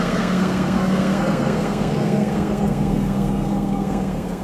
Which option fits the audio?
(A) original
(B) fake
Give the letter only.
B